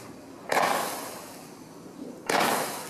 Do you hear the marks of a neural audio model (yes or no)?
no